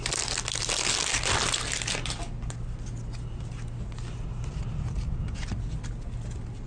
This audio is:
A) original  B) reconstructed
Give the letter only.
A